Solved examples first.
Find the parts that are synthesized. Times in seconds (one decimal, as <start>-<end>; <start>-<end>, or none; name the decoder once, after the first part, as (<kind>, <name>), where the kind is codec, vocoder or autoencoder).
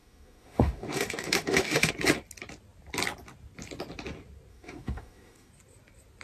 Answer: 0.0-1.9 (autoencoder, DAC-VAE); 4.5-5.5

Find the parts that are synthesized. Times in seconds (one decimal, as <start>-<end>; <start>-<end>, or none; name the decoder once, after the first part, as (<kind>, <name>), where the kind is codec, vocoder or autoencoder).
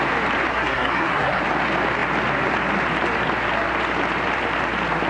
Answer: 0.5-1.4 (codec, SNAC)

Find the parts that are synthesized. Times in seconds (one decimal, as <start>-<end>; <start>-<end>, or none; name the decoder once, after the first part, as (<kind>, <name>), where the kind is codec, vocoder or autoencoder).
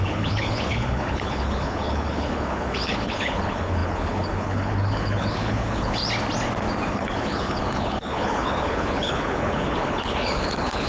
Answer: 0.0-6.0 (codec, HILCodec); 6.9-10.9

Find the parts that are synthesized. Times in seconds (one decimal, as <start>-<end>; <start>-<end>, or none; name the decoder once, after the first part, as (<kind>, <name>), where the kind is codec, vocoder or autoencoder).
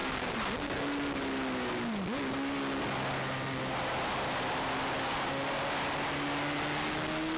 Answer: none